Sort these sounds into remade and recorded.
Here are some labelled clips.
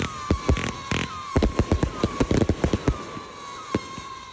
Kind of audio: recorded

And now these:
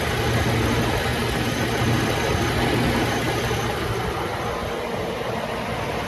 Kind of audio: recorded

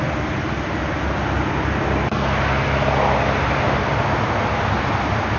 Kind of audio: recorded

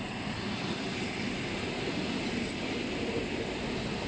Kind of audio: recorded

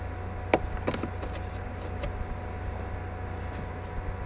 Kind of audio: recorded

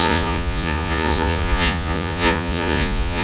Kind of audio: remade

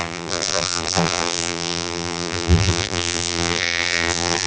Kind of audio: remade